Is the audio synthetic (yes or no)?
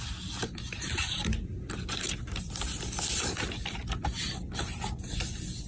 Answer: no